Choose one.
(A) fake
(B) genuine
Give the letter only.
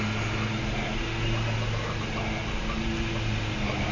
B